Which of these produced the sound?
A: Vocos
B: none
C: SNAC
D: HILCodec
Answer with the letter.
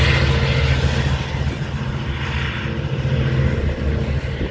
B